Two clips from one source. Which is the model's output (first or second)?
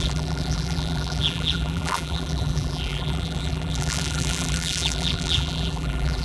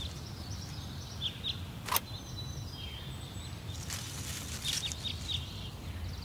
first